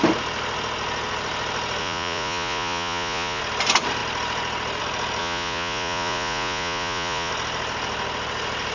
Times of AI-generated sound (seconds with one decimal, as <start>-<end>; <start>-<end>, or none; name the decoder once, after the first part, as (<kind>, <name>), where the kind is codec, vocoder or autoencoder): 1.8-3.4 (vocoder, Vocos); 5.2-7.3